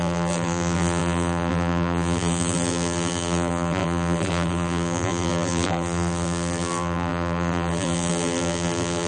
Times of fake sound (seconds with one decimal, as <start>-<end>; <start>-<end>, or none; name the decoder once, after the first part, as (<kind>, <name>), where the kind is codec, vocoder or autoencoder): 0.0-9.1 (vocoder, BigVGAN v2)

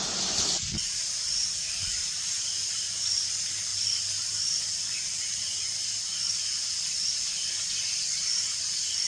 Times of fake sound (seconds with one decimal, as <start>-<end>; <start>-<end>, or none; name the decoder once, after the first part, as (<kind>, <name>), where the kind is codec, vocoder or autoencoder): 0.0-9.1 (vocoder, BigVGAN v2)

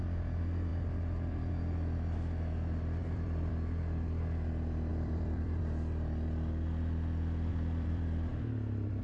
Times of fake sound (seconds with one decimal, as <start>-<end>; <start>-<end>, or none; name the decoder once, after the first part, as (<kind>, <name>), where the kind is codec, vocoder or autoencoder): 3.0-3.5 (vocoder, BigVGAN v2); 4.9-5.6; 7.5-8.3

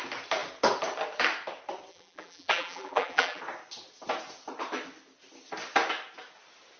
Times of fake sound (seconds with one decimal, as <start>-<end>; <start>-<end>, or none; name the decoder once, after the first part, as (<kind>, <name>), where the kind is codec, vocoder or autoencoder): 1.9-3.4 (vocoder, BigVGAN v2)

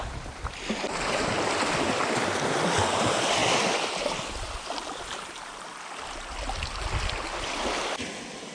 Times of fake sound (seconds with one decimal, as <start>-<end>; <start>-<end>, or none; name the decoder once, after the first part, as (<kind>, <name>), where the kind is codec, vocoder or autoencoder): none

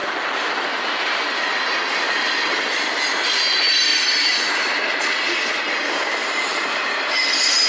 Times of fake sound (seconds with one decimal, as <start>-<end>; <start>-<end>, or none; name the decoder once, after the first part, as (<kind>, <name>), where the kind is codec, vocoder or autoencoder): 0.0-1.4 (vocoder, BigVGAN v2); 3.9-4.8; 6.2-7.1